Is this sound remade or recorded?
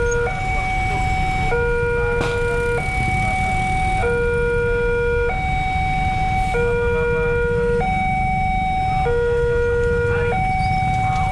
recorded